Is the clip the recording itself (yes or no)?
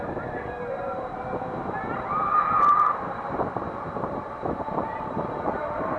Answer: no